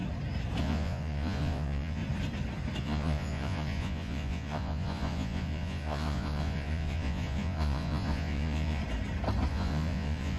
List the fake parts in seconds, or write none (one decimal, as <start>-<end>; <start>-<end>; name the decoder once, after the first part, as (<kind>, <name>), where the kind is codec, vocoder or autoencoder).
0.6-2.0 (vocoder, Vocos); 2.8-8.8; 9.5-10.4